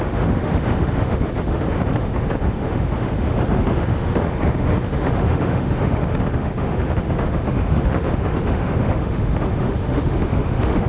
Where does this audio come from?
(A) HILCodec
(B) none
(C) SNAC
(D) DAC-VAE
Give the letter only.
D